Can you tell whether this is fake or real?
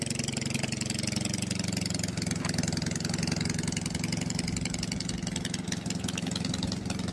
real